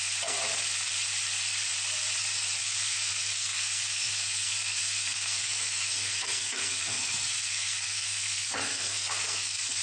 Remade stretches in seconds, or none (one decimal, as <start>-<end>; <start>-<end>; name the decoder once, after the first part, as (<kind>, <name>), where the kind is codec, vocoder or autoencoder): 0.0-0.4 (codec, SNAC); 2.6-9.8